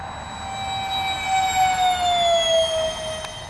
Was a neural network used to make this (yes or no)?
no